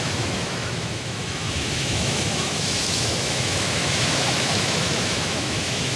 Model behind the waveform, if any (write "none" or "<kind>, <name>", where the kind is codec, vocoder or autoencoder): autoencoder, DAC-VAE